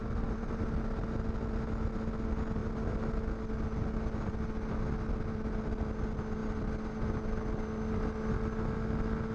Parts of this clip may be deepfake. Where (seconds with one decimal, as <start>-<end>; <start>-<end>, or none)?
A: 0.0-1.0